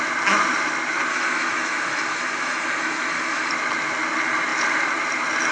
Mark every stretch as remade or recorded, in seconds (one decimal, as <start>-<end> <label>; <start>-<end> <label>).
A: 0.0-1.1 recorded; 1.1-3.5 remade; 3.5-5.5 recorded